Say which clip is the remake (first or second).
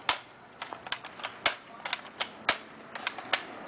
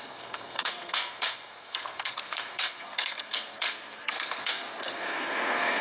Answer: second